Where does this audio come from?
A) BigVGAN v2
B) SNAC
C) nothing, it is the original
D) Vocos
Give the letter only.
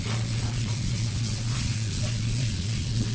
D